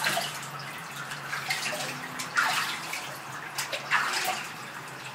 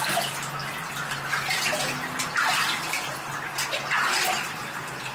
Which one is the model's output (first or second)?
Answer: first